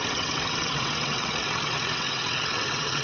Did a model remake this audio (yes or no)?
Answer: yes